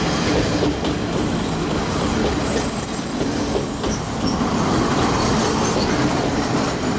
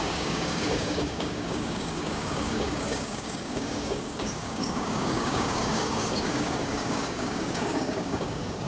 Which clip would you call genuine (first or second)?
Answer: first